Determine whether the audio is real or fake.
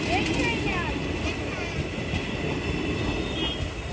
real